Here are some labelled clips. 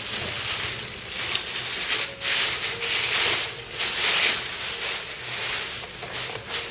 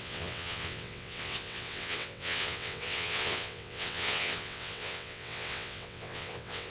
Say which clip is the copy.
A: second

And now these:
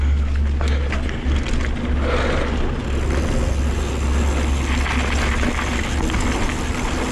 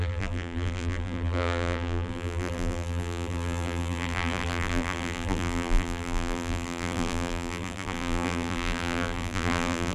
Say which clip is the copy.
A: second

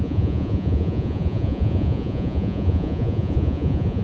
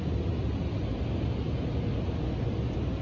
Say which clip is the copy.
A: first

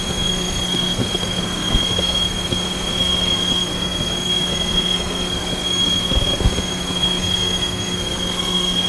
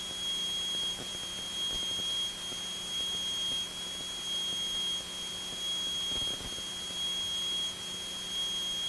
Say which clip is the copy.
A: first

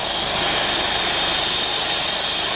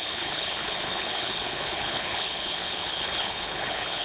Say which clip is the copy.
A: second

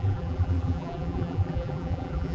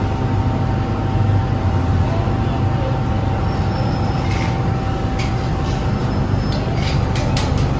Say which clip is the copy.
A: first